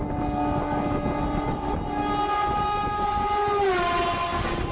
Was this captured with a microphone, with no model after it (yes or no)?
yes